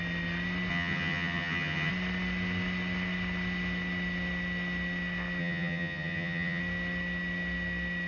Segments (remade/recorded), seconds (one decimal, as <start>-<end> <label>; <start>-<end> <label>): 0.0-0.7 recorded; 0.7-1.9 remade; 1.9-5.4 recorded; 5.4-6.6 remade; 6.6-8.1 recorded